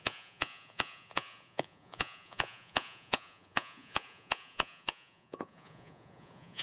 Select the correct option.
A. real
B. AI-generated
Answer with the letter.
B